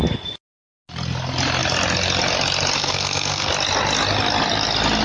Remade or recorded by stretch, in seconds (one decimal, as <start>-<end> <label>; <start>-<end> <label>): 0.0-2.8 recorded; 2.8-3.5 remade; 3.5-5.0 recorded